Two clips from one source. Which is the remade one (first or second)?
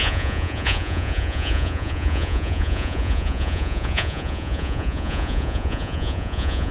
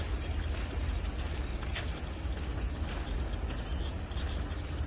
first